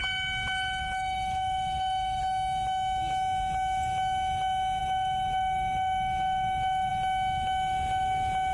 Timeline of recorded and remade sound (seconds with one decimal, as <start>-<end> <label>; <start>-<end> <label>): 0.0-2.2 remade; 2.2-4.8 recorded; 4.8-6.9 remade; 6.9-8.5 recorded